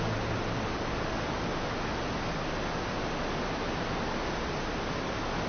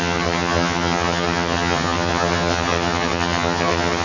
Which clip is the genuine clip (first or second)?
first